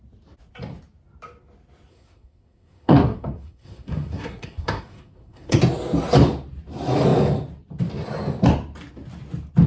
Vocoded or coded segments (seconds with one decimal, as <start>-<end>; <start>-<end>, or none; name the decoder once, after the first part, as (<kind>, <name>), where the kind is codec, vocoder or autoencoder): 1.9-5.6 (codec, SNAC)